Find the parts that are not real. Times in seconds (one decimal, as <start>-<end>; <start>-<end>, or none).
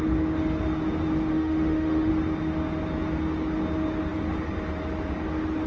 1.3-2.1